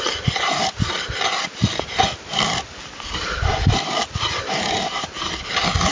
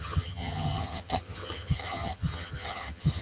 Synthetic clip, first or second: second